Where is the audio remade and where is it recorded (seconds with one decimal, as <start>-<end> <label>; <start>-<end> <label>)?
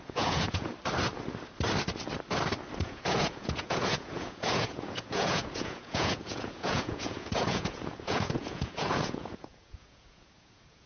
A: 0.0-0.7 remade; 0.7-2.8 recorded; 2.8-10.9 remade